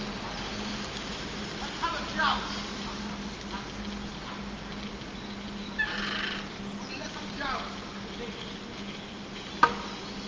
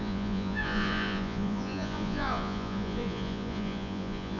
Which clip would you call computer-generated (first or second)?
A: second